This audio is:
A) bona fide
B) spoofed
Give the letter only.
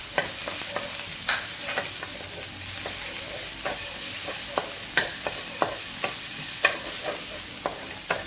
A